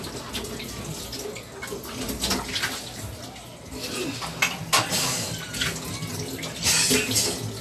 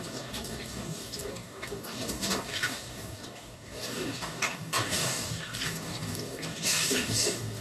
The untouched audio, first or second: first